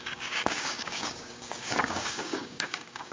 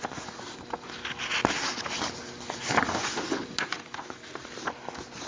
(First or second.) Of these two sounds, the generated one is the first